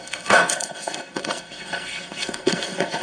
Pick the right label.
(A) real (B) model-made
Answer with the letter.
B